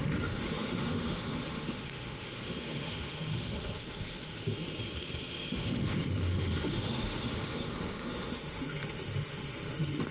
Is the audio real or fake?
fake